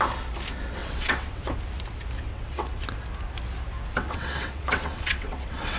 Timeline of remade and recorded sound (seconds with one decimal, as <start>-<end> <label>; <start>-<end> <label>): 0.0-0.8 recorded; 0.8-1.4 remade; 1.4-2.3 recorded; 2.3-2.8 remade; 2.8-4.0 recorded; 4.0-5.8 remade

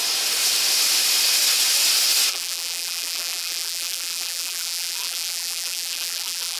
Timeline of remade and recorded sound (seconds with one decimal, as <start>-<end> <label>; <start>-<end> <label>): 0.0-2.3 recorded; 2.3-6.6 remade

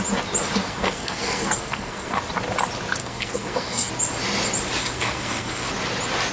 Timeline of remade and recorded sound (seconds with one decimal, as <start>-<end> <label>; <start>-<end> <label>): 0.0-0.6 recorded; 0.6-2.2 remade; 2.2-3.0 recorded; 3.0-3.9 remade; 3.9-4.8 recorded; 4.8-5.7 remade; 5.7-6.3 recorded

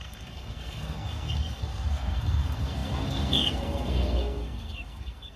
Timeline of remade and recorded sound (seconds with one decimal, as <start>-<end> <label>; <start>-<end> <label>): 0.0-5.4 remade